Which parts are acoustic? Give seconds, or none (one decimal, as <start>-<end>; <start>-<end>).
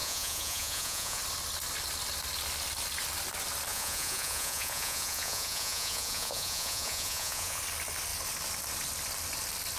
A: 1.2-3.7; 7.6-9.8